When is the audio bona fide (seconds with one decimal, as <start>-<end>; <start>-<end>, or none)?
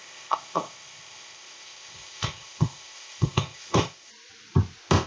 4.1-5.1